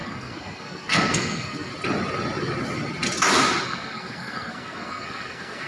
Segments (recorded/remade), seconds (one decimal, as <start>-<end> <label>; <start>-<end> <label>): 0.0-1.7 remade; 1.7-3.6 recorded; 3.6-5.7 remade